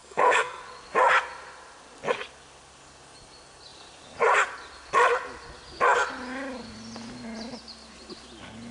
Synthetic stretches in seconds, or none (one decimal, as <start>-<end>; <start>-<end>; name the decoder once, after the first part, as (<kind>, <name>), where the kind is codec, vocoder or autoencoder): 0.0-0.6 (codec, SNAC)